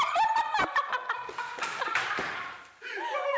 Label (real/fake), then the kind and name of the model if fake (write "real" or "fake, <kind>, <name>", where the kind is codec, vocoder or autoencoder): real